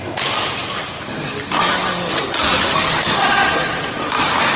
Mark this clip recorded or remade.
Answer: recorded